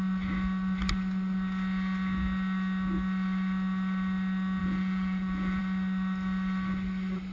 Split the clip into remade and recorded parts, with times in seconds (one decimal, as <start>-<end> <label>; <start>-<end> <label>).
0.0-4.6 recorded; 4.6-5.6 remade; 5.6-7.3 recorded